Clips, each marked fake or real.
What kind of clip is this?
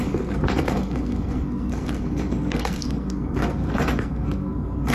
fake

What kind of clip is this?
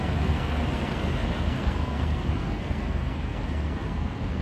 fake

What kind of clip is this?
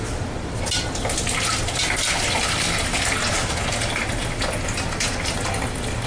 real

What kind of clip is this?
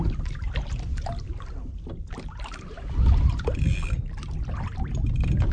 real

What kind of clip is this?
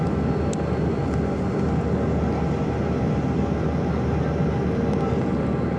real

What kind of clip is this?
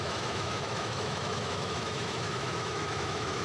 fake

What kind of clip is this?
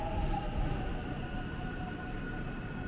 real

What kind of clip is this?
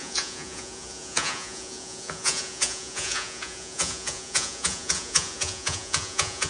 fake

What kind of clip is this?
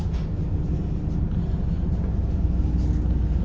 real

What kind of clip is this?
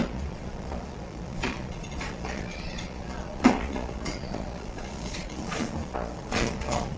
fake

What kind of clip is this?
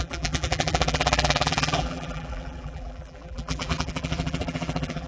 fake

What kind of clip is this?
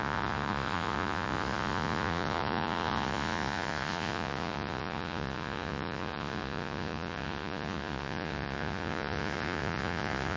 fake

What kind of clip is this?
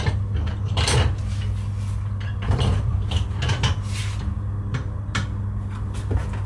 real